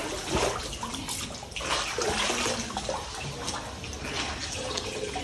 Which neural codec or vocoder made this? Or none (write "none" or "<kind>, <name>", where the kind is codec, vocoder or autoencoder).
none